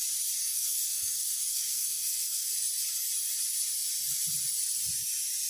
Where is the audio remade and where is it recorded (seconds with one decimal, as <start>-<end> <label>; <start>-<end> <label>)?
0.0-0.4 recorded; 0.4-2.5 remade; 2.5-5.5 recorded